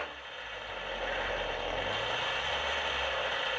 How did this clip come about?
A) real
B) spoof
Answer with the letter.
A